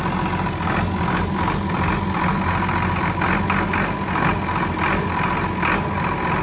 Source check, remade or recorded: recorded